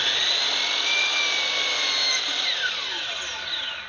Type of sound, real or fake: real